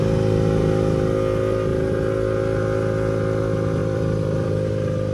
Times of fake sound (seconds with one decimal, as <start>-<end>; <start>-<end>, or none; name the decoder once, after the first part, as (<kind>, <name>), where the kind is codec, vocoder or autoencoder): 3.8-4.5 (vocoder, BigVGAN v2)